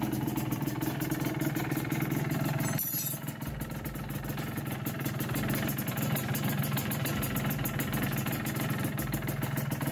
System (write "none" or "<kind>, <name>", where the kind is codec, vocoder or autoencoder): vocoder, BigVGAN v2